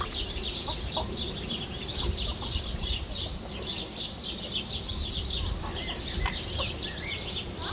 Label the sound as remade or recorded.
recorded